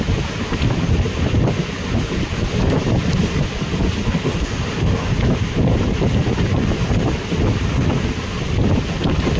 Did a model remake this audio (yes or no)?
no